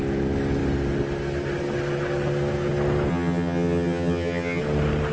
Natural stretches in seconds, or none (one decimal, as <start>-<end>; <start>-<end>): 0.0-3.1; 4.6-5.1